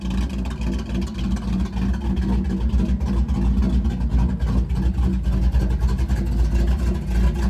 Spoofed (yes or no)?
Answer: no